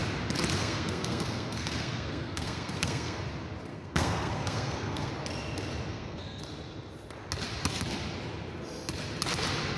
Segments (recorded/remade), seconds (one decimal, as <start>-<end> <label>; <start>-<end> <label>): 0.0-0.6 recorded; 0.6-3.2 remade; 3.2-3.7 recorded; 3.7-5.1 remade; 5.1-5.9 recorded; 5.9-6.4 remade; 6.4-9.8 recorded